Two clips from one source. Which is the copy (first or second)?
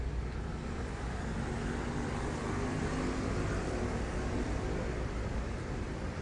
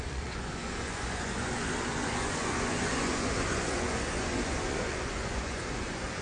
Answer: second